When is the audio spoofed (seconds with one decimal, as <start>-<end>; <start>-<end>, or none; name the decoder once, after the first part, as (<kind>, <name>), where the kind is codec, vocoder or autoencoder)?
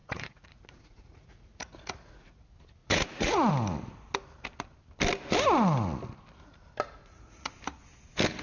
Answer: 0.0-2.4 (vocoder, Vocos); 2.8-3.5; 7.0-7.5